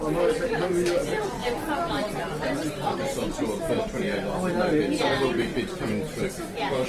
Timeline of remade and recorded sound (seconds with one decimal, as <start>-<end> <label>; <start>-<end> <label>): 0.0-1.4 recorded; 1.4-3.4 remade; 3.4-6.9 recorded